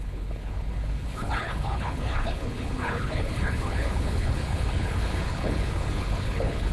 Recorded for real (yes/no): no